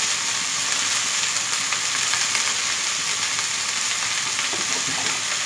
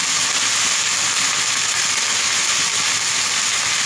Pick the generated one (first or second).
first